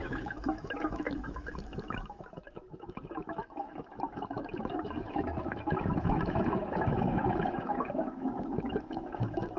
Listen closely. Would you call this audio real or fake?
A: fake